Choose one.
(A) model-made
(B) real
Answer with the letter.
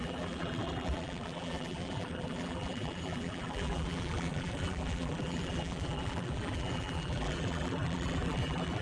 A